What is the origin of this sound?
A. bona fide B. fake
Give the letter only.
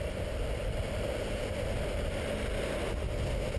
A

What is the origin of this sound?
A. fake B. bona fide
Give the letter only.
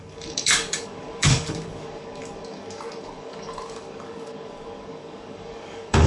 A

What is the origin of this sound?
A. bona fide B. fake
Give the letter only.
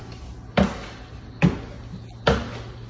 A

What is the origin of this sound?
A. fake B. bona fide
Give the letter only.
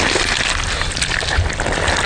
B